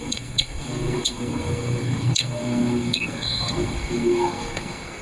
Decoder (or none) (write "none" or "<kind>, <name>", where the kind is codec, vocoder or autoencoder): codec, SNAC